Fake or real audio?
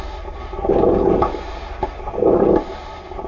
real